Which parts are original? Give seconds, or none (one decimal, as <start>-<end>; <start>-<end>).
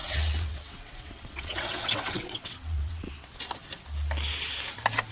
3.1-5.1